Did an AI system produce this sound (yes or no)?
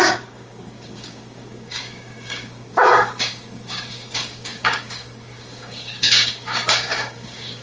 yes